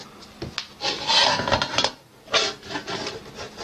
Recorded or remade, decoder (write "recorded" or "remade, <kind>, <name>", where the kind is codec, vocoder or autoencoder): recorded